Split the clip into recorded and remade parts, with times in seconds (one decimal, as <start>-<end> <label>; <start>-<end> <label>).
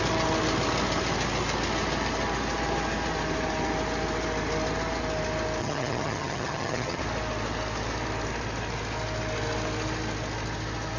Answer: 0.0-5.6 recorded; 5.6-7.0 remade; 7.0-11.0 recorded